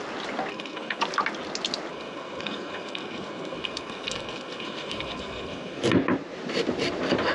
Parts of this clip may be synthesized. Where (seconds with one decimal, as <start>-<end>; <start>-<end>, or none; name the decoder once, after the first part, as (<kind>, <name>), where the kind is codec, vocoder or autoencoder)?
0.5-1.0 (codec, SNAC); 1.9-5.8